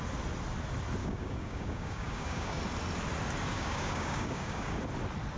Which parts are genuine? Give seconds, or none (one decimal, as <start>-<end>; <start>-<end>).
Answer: 0.0-1.0; 2.6-3.5; 4.8-5.4